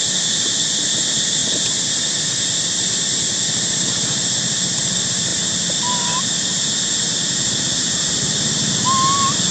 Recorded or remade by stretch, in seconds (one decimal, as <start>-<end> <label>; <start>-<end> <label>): 0.0-9.5 recorded